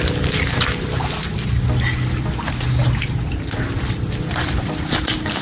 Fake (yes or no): no